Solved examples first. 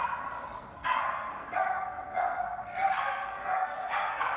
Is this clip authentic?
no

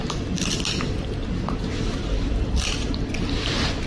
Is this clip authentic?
yes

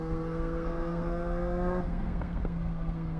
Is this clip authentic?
no